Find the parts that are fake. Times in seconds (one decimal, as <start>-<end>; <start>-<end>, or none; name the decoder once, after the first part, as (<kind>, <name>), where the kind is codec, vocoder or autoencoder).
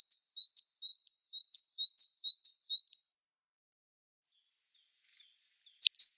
0.9-4.6 (vocoder, BigVGAN v2)